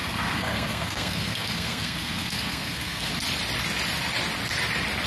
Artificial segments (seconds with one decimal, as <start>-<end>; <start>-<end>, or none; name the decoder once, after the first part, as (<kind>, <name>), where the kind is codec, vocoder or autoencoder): 0.0-3.1 (codec, SNAC)